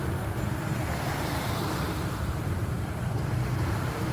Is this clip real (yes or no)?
no